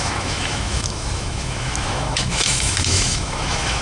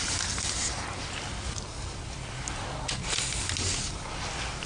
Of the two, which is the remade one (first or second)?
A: first